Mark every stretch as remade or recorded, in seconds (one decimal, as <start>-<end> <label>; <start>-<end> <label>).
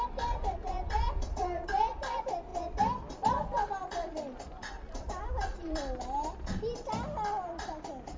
0.0-8.2 recorded